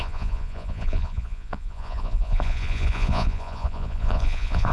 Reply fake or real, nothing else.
fake